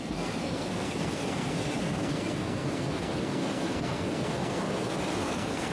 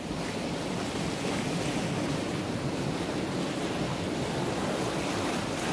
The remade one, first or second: first